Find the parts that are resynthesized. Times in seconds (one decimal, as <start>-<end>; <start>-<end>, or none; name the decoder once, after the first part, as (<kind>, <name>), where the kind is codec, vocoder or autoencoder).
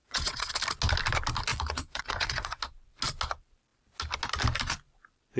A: 0.0-0.5 (vocoder, WaveNeXt); 1.5-2.6